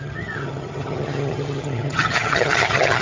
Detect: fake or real fake